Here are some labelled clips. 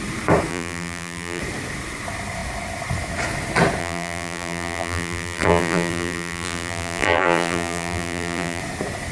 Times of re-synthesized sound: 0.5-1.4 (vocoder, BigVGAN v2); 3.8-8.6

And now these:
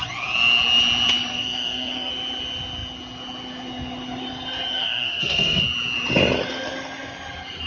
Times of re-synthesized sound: 1.3-2.1 (codec, SNAC); 4.7-5.6

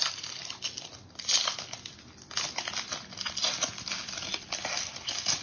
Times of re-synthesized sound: none

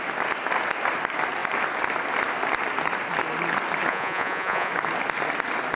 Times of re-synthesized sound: 3.9-4.7 (vocoder, Vocos)

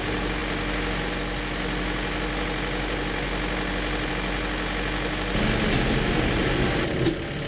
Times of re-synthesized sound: none

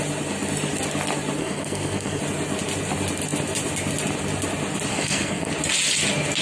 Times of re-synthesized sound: 1.4-2.2 (codec, SNAC); 4.9-5.5

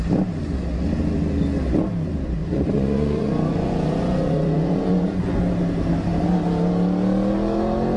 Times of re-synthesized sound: 2.4-5.4 (vocoder, Vocos)